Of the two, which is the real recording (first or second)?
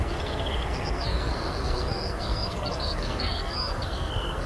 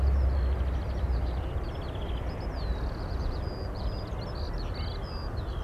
second